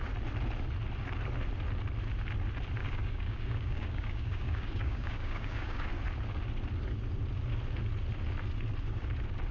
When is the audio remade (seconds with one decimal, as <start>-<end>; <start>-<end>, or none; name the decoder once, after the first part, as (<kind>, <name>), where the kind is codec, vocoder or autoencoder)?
2.8-5.9 (codec, DAC)